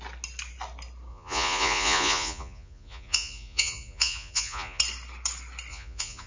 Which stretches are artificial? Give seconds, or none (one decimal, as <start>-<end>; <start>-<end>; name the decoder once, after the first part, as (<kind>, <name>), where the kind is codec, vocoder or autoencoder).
1.1-4.8 (vocoder, Vocos); 5.7-6.3